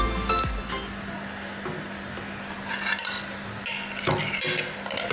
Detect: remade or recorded recorded